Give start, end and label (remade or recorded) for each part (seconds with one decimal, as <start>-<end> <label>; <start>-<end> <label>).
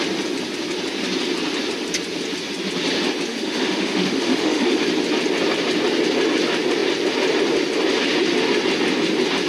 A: 0.0-3.3 recorded; 3.3-4.8 remade; 4.8-9.5 recorded